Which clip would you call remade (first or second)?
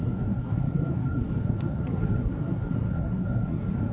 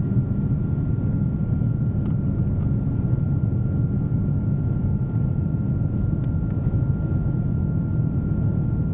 first